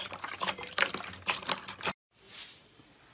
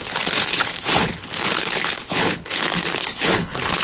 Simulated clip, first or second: second